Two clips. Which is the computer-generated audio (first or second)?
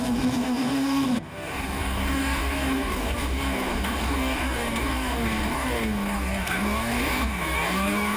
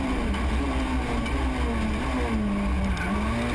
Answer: first